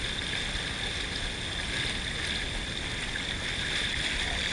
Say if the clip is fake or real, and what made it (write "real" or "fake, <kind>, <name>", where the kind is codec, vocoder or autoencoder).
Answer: real